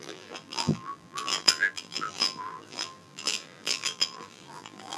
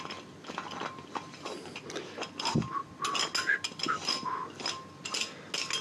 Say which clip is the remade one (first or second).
first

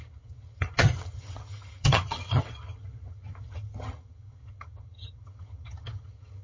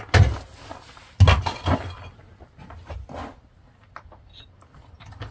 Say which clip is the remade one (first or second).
first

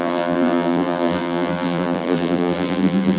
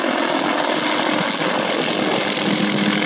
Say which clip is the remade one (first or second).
first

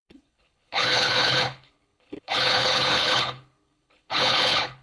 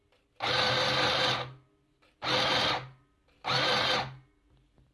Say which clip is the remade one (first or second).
first